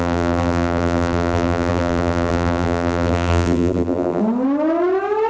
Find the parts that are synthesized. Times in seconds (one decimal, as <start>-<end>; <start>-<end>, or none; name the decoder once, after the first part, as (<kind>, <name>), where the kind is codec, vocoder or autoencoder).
0.0-4.2 (vocoder, BigVGAN v2)